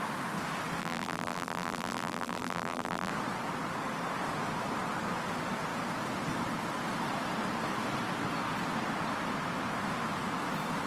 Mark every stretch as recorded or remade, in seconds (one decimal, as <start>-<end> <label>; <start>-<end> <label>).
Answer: 0.0-0.8 recorded; 0.8-3.1 remade; 3.1-10.9 recorded